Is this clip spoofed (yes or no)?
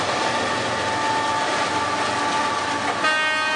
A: no